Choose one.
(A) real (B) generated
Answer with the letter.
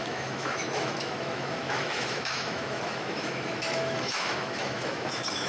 B